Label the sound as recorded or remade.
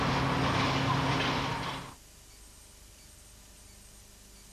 recorded